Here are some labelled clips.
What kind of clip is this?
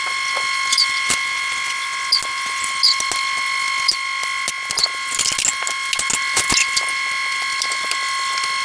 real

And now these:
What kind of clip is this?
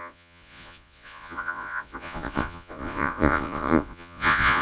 fake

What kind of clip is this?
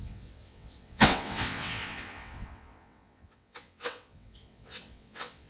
fake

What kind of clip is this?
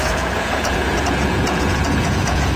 fake